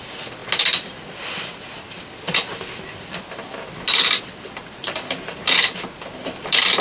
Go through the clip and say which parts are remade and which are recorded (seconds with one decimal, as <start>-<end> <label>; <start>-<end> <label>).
0.0-6.8 remade